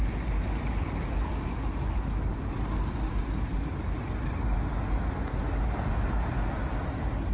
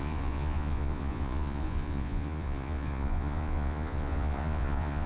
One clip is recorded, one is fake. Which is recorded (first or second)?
first